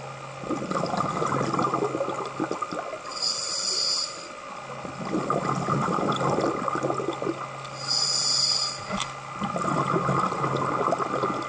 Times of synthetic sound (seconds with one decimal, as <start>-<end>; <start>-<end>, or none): none